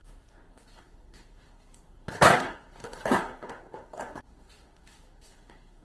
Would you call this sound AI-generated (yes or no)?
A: yes